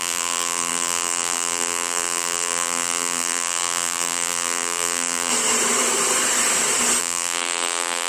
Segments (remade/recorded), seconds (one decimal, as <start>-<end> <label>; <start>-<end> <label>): 0.0-5.3 remade; 5.3-7.0 recorded; 7.0-8.1 remade